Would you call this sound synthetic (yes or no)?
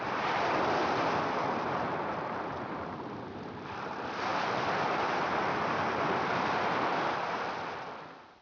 no